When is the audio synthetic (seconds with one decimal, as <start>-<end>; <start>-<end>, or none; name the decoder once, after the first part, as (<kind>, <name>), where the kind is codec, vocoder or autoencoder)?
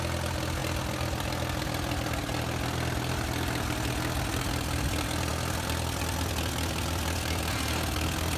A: none